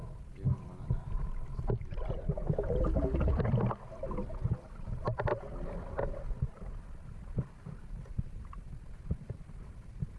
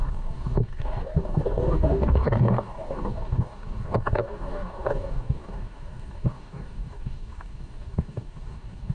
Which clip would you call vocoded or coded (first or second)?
second